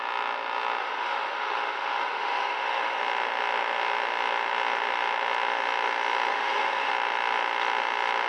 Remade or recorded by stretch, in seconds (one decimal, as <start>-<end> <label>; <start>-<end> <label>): 0.0-0.8 recorded; 0.8-3.0 remade; 3.0-6.3 recorded; 6.3-6.9 remade; 6.9-8.3 recorded